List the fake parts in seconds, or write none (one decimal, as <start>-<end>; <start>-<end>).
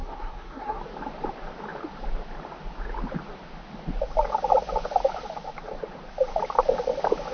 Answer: 0.0-0.8